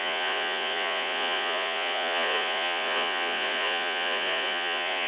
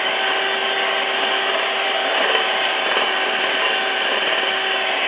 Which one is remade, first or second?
first